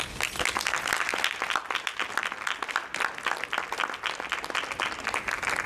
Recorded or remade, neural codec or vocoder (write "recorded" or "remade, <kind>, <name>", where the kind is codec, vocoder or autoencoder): recorded